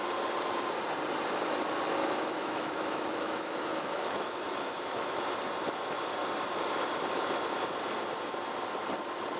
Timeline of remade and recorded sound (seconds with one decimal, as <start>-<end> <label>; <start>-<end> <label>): 0.0-2.0 recorded; 2.0-5.2 remade; 5.2-9.4 recorded